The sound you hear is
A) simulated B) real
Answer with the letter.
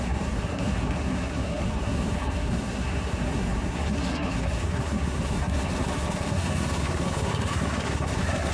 A